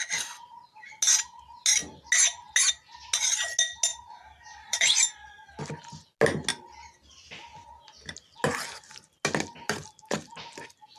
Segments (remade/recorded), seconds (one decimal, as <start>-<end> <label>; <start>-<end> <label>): 0.0-3.9 recorded; 3.9-5.6 remade; 5.6-11.0 recorded